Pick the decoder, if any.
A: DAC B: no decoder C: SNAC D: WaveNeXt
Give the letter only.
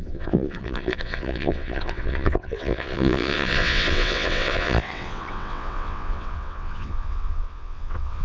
D